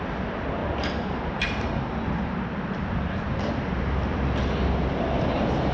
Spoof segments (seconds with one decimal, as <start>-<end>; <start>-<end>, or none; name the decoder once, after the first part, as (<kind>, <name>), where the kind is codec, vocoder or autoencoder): 0.6-3.5 (vocoder, BigVGAN v2)